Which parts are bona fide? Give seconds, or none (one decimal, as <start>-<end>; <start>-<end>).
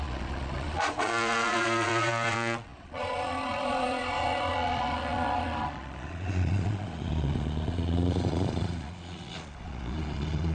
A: none